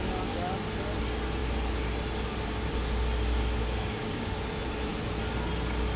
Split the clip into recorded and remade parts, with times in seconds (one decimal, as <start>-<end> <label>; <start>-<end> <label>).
0.0-3.6 recorded; 3.6-4.4 remade; 4.4-6.0 recorded